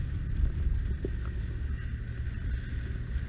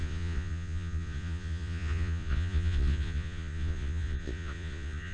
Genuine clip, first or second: first